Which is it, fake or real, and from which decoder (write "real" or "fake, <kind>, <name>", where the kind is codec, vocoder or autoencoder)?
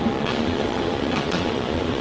fake, vocoder, Vocos